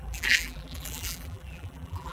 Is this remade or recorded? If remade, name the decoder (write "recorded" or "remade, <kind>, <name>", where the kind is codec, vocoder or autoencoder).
remade, vocoder, BigVGAN v2